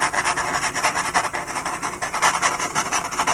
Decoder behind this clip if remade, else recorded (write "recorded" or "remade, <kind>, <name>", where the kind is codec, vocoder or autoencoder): recorded